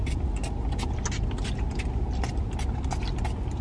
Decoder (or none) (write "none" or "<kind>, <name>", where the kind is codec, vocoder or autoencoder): none